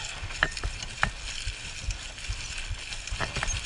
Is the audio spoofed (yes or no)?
no